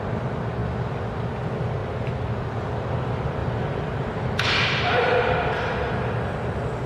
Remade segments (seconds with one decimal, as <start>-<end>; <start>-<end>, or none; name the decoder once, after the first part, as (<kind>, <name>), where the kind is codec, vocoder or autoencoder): 1.8-2.3 (vocoder, BigVGAN v2); 3.4-4.2